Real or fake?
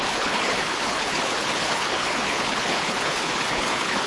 fake